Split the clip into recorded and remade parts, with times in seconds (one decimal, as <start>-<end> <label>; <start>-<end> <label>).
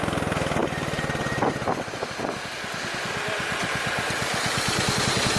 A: 0.0-5.4 recorded